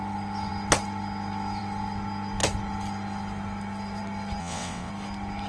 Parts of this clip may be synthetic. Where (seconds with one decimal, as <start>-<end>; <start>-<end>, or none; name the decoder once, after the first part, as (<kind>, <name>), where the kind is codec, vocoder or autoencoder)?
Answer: 4.4-4.9 (vocoder, WaveNeXt)